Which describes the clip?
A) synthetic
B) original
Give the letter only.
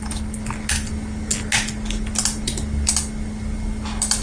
B